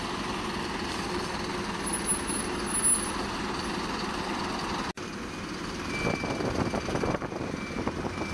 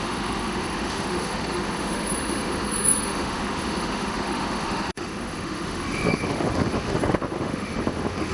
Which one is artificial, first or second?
second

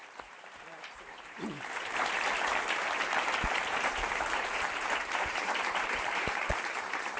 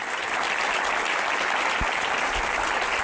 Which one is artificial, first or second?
first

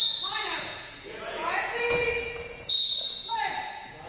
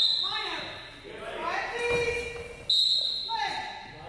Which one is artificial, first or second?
first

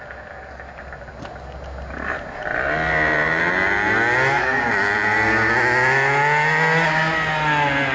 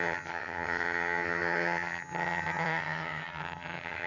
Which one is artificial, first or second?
second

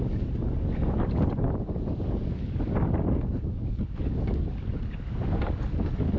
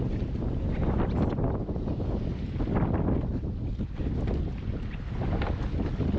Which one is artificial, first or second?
first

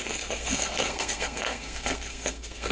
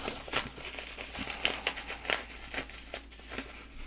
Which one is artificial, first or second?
first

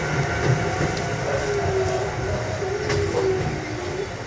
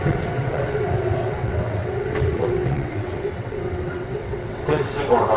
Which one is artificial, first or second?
second